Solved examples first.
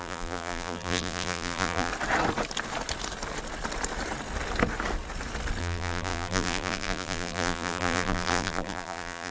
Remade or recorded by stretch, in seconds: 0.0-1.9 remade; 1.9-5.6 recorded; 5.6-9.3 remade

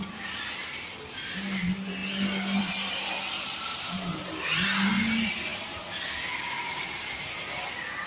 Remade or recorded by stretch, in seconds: 0.0-8.1 recorded

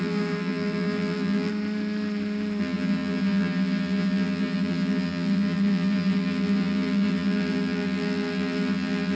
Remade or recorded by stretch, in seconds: 0.0-1.5 remade; 1.5-2.6 recorded; 2.6-9.1 remade

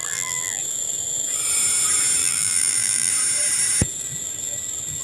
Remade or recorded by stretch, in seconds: 0.0-0.6 remade; 0.6-2.2 recorded; 2.2-3.1 remade; 3.1-5.0 recorded

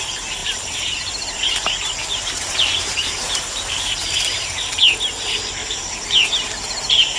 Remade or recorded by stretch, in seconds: 0.0-0.4 recorded; 0.4-4.7 remade; 4.7-5.6 recorded; 5.6-6.3 remade; 6.3-7.2 recorded

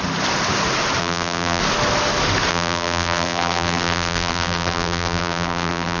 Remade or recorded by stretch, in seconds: 0.0-1.0 recorded; 1.0-1.6 remade; 1.6-2.5 recorded; 2.5-6.0 remade

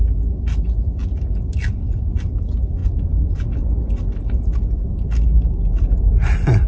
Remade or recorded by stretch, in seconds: 0.0-6.7 recorded